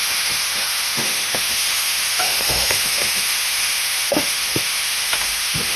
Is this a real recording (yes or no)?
no